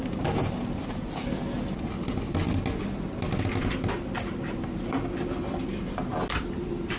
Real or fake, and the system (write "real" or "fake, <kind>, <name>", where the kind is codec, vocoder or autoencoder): real